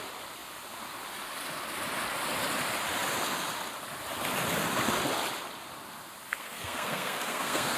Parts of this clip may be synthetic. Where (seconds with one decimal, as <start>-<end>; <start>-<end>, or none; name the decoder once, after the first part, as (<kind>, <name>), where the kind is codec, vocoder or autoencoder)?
6.3-7.8 (codec, SNAC)